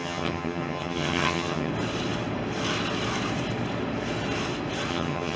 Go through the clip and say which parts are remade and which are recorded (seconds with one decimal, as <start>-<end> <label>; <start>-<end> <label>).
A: 0.0-1.7 remade; 1.7-4.9 recorded; 4.9-5.4 remade